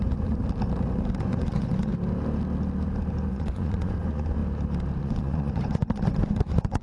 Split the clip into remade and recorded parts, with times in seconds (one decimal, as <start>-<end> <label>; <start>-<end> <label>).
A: 0.0-0.4 remade; 0.4-1.2 recorded; 1.2-1.9 remade; 1.9-3.3 recorded; 3.3-4.4 remade; 4.4-5.0 recorded; 5.0-6.8 remade